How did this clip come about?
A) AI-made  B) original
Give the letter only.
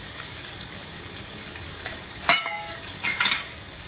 A